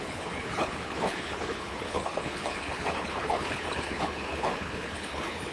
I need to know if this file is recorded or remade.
remade